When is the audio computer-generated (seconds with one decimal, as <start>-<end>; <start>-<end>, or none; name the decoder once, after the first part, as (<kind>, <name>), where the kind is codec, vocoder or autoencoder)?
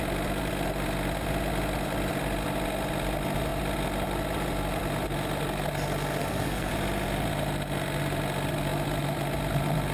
6.2-6.7 (codec, SNAC)